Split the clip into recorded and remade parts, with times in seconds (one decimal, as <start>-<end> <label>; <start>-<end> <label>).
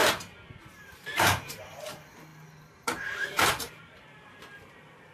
0.0-0.6 recorded; 0.6-5.1 remade